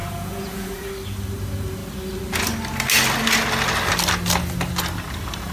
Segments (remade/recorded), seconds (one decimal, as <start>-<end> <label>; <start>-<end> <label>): 0.0-0.9 remade; 0.9-5.5 recorded